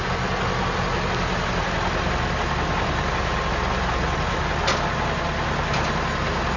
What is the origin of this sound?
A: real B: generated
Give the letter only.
A